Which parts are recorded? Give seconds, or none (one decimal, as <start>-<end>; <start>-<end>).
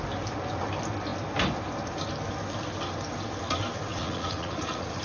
0.0-3.9